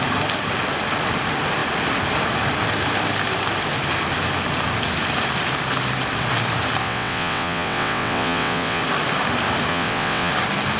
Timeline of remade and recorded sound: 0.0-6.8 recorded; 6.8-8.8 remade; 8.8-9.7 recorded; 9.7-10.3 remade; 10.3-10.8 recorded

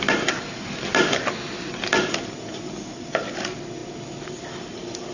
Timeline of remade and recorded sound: 0.0-5.1 recorded

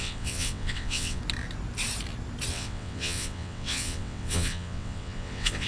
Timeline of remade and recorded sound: 0.0-1.2 remade; 1.2-2.5 recorded; 2.5-5.7 remade

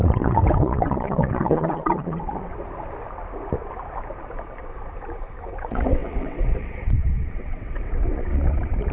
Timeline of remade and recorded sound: 0.0-2.5 remade; 2.5-5.6 recorded; 5.6-8.9 remade

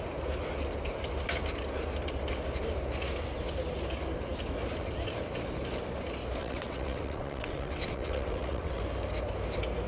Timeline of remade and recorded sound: 0.0-6.4 recorded; 6.4-8.8 remade; 8.8-9.9 recorded

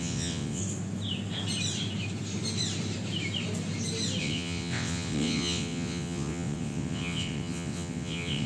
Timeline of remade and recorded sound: 0.0-0.6 remade; 0.6-4.2 recorded; 4.2-8.5 remade